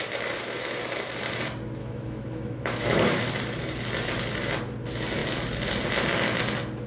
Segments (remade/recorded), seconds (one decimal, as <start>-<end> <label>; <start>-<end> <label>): 0.0-1.8 recorded; 1.8-3.2 remade; 3.2-6.9 recorded